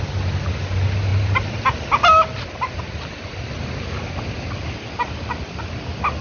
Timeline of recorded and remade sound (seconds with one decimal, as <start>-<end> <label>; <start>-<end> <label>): 0.0-6.2 recorded